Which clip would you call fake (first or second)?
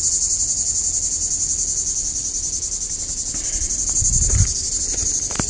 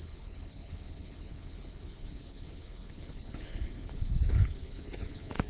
second